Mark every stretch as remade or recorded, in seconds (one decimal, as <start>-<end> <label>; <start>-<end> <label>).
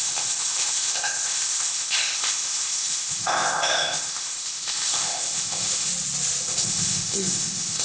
0.0-5.9 remade; 5.9-6.4 recorded; 6.4-7.8 remade